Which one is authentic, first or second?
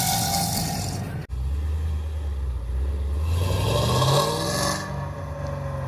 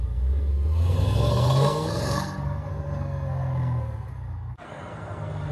first